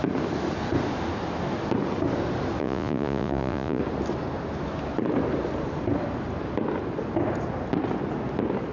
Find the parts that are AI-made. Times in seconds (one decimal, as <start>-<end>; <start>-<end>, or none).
2.6-3.8